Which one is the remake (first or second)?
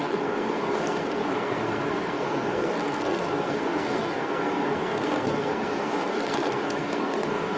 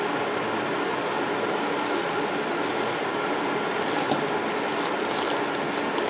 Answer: first